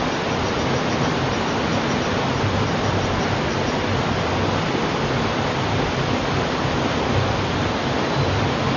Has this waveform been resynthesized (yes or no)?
no